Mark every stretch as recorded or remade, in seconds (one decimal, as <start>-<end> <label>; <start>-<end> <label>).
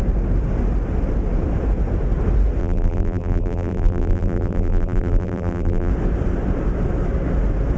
0.0-2.6 recorded; 2.6-5.9 remade; 5.9-7.8 recorded